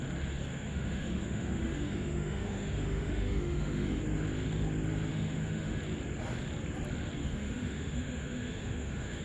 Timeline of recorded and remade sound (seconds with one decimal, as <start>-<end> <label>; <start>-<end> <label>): 0.0-0.5 recorded; 0.5-4.0 remade; 4.0-5.1 recorded; 5.1-5.8 remade; 5.8-7.2 recorded; 7.2-9.2 remade